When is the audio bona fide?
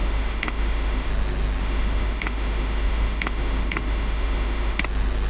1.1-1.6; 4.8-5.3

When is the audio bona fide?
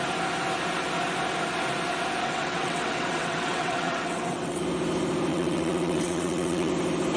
0.0-2.2; 4.6-5.3; 6.7-7.2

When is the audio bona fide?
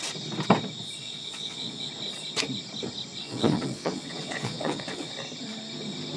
0.0-1.0; 1.9-3.2; 5.1-6.2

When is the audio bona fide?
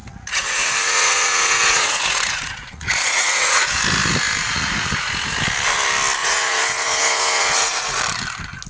3.8-4.4; 5.1-6.2; 8.0-8.7